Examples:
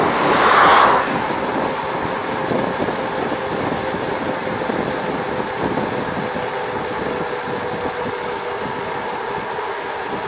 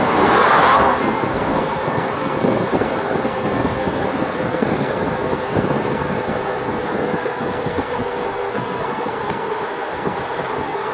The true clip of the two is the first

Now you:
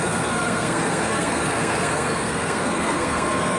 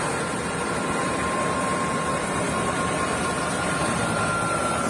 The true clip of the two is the second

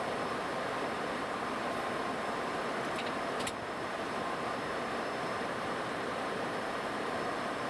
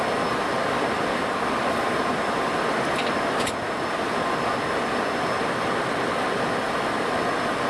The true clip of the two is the second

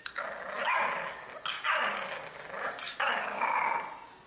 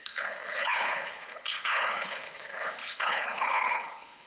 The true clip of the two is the first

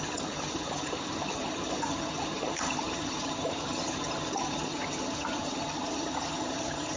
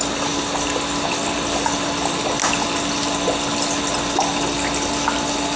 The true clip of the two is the second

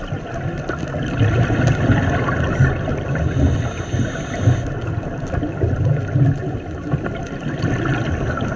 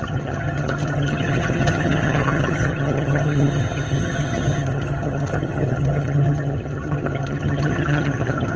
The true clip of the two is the first